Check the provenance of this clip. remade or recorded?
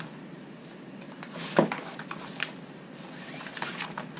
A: recorded